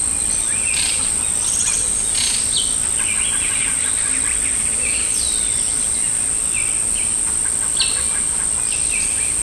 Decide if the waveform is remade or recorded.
recorded